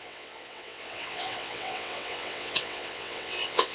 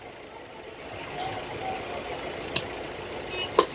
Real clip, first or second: second